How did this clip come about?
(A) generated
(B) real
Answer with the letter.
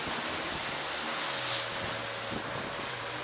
B